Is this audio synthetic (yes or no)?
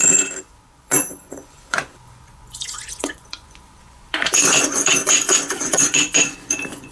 yes